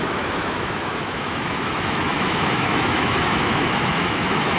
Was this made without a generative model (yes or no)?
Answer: no